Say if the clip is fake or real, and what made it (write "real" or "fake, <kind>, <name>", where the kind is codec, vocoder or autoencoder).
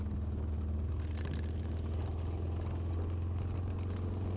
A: real